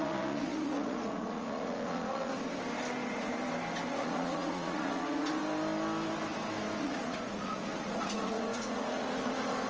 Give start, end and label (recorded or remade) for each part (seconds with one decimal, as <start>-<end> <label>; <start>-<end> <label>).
0.0-2.3 remade; 2.3-4.0 recorded; 4.0-5.4 remade; 5.4-6.8 recorded; 6.8-9.7 remade